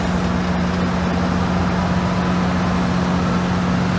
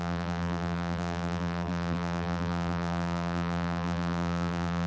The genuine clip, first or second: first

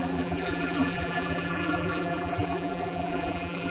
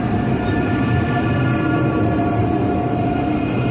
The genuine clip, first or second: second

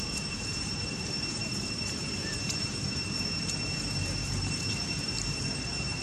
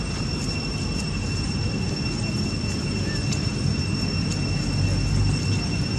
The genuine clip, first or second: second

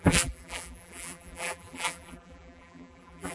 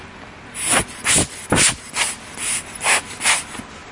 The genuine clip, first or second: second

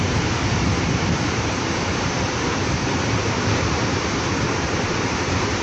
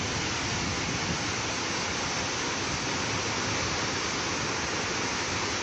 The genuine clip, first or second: second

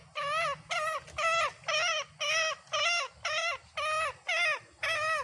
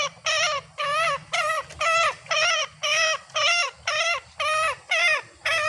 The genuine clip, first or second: first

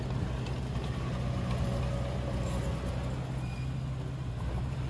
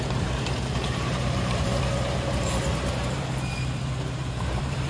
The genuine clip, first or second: first